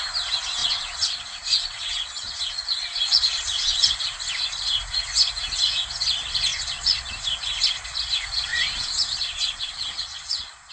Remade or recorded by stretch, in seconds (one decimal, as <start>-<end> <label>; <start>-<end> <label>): 0.0-0.6 recorded; 0.6-4.0 remade; 4.0-6.5 recorded; 6.5-7.1 remade; 7.1-8.5 recorded; 8.5-10.7 remade